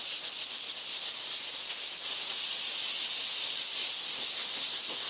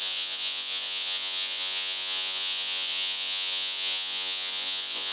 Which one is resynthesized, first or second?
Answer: second